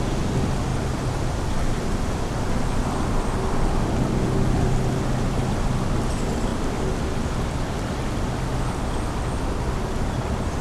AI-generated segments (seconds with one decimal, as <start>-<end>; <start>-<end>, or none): 6.5-8.1